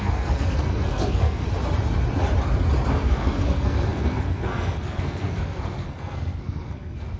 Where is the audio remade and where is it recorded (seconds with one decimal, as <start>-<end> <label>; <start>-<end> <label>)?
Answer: 0.0-1.4 remade; 1.4-2.9 recorded; 2.9-7.2 remade